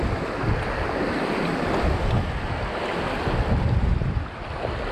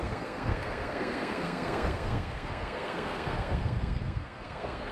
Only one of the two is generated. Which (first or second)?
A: second